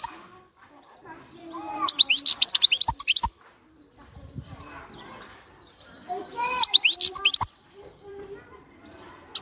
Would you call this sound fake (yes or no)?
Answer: yes